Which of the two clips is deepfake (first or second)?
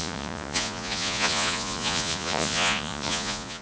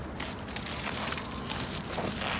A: first